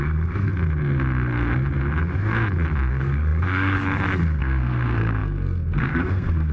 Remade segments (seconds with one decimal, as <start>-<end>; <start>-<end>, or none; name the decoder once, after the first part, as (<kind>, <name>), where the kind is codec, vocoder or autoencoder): 0.0-0.5 (codec, SNAC); 2.9-6.5